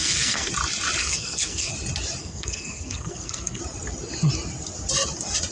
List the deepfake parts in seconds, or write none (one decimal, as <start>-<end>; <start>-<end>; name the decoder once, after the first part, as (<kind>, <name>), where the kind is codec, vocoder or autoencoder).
0.0-0.5 (codec, SNAC); 1.0-1.7; 2.2-3.6

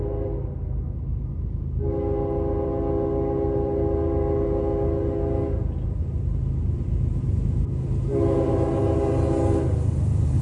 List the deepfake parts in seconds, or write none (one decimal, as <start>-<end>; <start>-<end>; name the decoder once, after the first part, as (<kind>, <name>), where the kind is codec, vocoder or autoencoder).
none

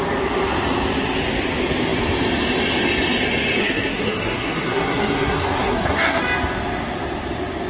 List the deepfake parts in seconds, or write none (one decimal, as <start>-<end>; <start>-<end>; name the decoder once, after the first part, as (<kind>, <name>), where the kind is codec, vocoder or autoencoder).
3.6-6.2 (codec, SNAC)

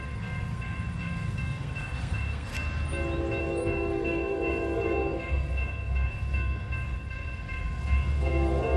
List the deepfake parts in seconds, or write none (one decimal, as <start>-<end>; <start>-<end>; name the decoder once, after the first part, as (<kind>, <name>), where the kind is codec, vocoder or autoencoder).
0.0-2.5 (codec, SNAC); 3.4-8.8

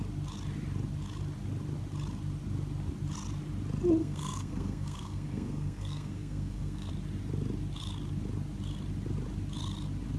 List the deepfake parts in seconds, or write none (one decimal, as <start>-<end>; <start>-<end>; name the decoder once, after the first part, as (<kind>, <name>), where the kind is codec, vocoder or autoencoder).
4.0-6.9 (codec, SNAC)

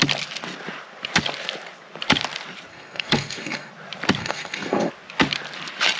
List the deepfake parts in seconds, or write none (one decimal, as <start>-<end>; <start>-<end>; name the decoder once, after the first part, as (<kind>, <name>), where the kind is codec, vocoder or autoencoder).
2.7-3.7 (codec, SNAC); 4.2-4.9

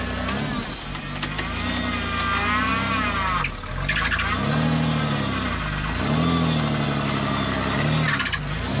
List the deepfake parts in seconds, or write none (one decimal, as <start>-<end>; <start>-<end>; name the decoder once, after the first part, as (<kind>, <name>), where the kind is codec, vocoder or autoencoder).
none